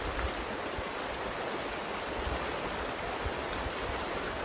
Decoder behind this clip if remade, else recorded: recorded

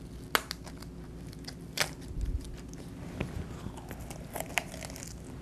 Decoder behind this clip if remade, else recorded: recorded